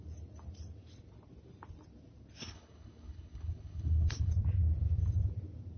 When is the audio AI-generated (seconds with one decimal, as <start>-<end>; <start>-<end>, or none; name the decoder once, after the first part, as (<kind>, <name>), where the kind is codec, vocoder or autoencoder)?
2.4-4.3 (codec, HILCodec)